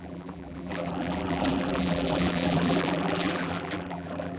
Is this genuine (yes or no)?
no